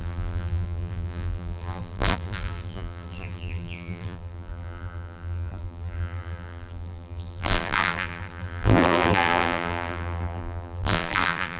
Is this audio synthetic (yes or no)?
yes